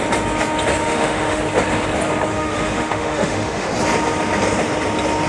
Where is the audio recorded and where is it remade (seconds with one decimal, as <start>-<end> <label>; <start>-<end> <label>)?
0.0-0.8 recorded; 0.8-1.4 remade; 1.4-2.3 recorded; 2.3-3.7 remade; 3.7-5.3 recorded